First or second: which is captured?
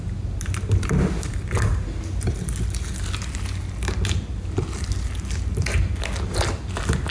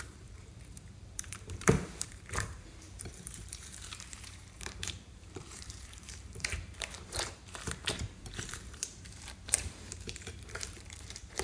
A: first